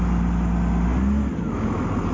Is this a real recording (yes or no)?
yes